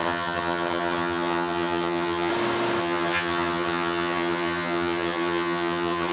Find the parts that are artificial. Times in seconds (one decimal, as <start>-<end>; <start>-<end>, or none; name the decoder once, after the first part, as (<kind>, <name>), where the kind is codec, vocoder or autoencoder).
0.0-2.3 (vocoder, HiFi-GAN); 2.8-6.1